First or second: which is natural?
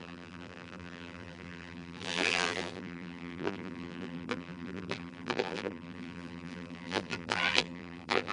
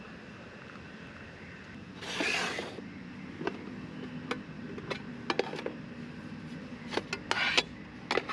second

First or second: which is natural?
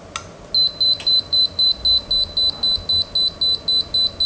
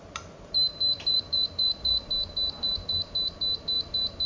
first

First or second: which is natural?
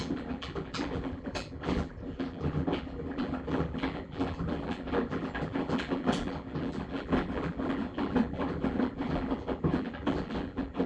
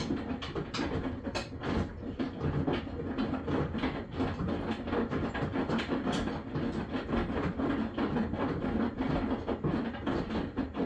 second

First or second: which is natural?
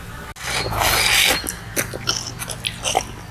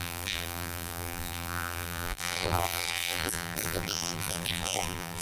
first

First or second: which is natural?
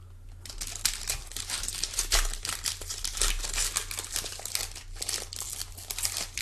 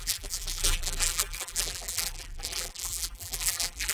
first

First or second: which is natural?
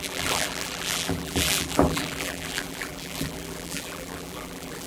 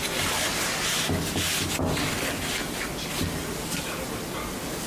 second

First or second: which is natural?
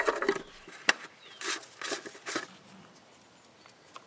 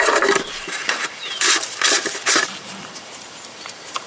first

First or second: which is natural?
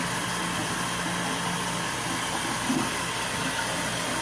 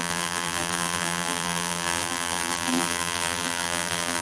first